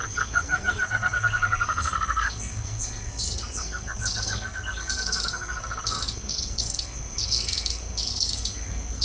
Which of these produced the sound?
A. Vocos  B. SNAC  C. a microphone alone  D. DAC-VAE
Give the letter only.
B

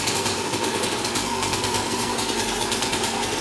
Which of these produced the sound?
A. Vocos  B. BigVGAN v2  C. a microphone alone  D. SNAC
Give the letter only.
D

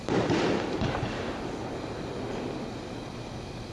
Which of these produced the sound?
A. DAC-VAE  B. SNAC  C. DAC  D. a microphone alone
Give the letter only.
D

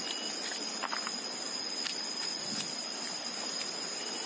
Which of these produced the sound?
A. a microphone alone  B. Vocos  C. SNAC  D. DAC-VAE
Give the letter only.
A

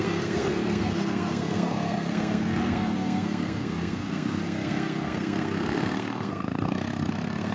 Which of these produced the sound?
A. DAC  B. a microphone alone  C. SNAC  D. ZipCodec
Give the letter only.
C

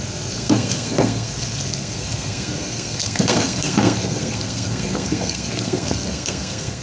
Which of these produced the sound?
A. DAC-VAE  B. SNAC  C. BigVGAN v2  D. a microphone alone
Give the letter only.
B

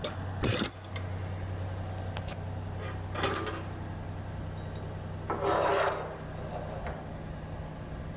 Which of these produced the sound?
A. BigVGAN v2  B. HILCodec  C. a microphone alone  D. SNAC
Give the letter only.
C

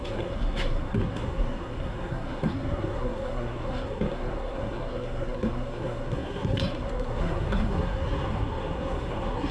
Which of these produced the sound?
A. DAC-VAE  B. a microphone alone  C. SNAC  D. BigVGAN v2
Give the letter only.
C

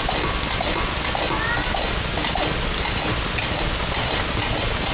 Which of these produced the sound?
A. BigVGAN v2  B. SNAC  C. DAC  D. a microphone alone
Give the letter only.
D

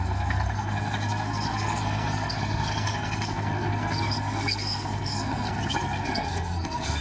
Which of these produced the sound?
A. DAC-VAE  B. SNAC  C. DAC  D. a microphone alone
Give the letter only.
B